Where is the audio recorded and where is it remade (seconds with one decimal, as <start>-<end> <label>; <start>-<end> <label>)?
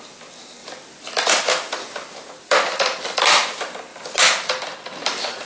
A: 0.0-5.5 recorded